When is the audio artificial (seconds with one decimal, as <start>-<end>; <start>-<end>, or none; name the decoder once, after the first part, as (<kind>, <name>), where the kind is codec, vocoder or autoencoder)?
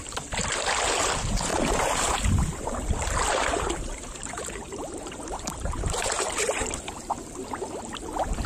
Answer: 1.5-2.1 (vocoder, BigVGAN v2); 3.3-6.9